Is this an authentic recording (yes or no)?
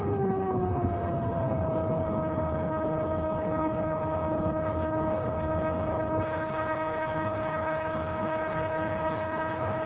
no